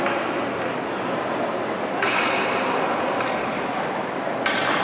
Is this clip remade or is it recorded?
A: recorded